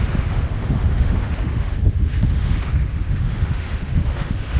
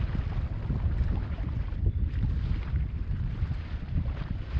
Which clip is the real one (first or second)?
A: second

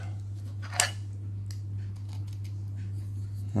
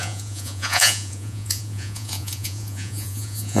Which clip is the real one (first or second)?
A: first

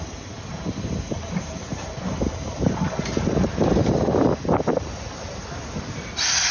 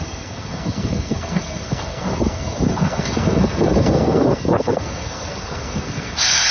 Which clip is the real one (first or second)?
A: first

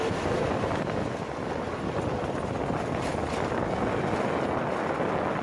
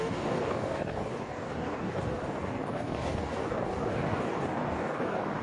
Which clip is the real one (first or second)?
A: first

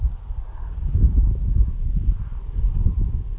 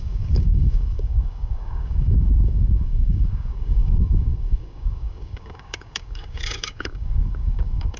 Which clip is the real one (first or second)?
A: first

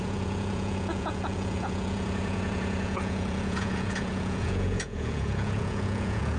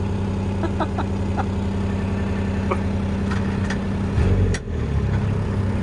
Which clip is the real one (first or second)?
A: second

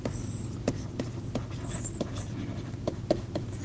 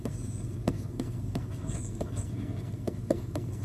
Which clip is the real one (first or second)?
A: first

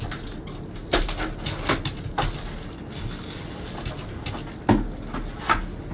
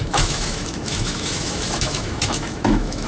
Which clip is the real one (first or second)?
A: first